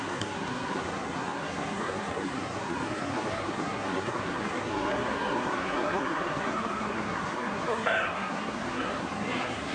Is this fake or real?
fake